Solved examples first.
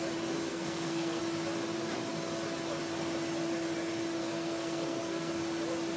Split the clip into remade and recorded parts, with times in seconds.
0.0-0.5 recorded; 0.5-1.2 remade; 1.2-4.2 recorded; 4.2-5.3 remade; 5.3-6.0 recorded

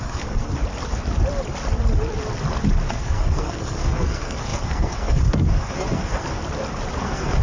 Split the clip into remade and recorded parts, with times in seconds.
0.0-0.5 remade; 0.5-2.9 recorded; 2.9-6.4 remade; 6.4-7.0 recorded; 7.0-7.4 remade

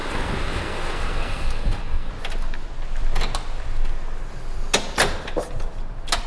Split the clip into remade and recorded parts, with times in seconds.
0.0-2.1 remade; 2.1-6.3 recorded

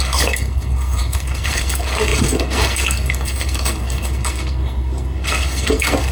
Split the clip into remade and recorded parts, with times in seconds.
0.0-6.1 remade

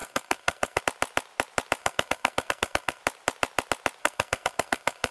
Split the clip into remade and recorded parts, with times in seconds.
0.0-0.8 remade; 0.8-1.8 recorded; 1.8-3.0 remade; 3.0-4.0 recorded; 4.0-5.1 remade

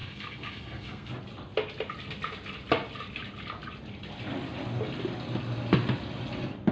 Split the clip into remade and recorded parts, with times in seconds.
0.0-1.1 remade; 1.1-6.7 recorded